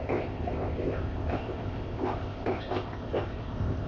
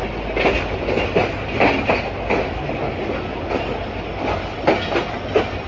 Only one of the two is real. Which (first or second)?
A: second